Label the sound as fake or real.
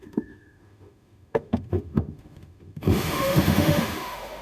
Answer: fake